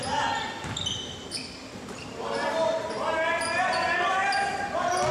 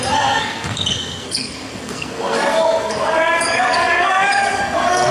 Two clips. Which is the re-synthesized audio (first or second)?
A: second